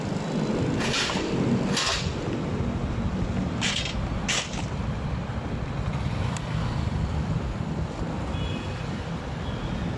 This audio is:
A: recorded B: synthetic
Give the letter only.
A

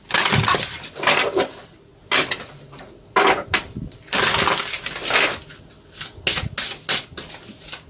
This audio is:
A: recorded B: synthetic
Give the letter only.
A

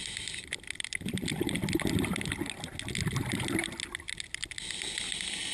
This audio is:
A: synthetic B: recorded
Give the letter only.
B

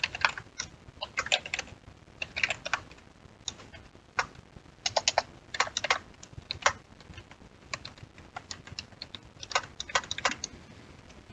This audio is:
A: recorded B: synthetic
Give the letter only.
A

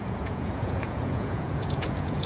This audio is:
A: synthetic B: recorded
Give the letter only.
A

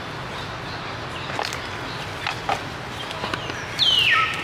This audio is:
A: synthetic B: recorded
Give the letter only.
B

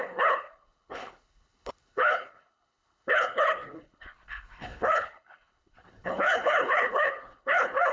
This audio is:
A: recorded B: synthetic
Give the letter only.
B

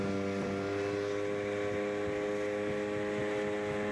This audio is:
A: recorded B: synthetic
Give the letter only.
A